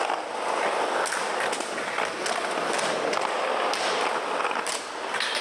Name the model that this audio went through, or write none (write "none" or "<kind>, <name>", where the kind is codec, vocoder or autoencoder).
none